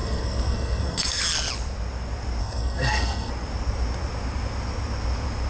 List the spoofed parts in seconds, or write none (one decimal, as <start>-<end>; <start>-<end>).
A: 0.0-1.2; 2.4-3.3